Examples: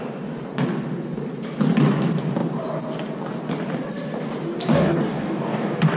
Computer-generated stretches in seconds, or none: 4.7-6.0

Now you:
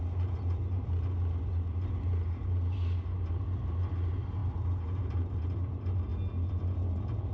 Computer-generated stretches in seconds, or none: none

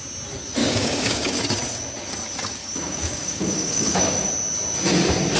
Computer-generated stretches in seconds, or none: 0.6-1.4; 2.6-4.3

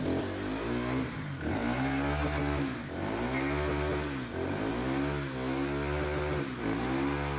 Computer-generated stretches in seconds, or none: none